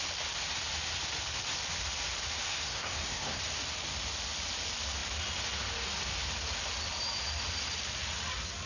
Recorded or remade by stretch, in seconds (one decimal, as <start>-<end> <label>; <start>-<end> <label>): 0.0-2.5 recorded; 2.5-3.4 remade; 3.4-8.7 recorded